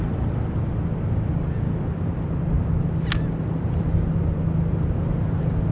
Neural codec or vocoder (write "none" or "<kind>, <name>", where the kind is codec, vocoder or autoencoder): none